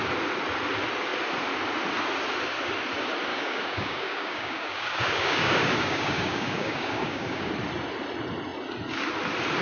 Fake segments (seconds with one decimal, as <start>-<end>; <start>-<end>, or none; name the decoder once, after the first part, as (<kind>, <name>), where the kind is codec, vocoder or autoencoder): 3.3-7.5 (codec, DAC)